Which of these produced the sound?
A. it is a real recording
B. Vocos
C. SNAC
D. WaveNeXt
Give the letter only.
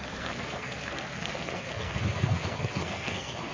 C